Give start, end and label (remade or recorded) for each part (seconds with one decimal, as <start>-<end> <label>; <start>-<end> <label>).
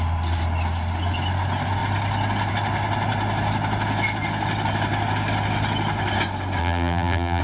0.0-6.6 recorded; 6.6-7.4 remade